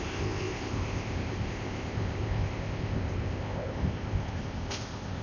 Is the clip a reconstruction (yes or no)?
yes